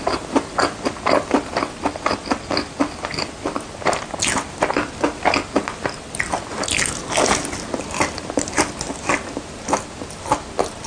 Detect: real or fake real